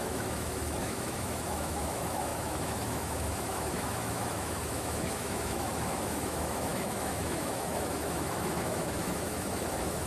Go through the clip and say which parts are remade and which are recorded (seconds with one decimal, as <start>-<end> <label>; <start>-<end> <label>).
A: 0.0-10.1 remade